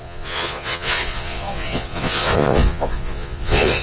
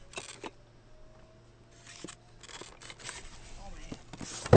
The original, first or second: second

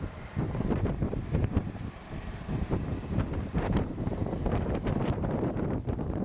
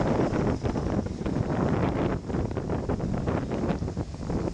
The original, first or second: second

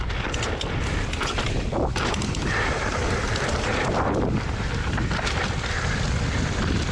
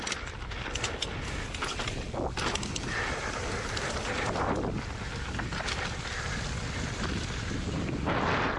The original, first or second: second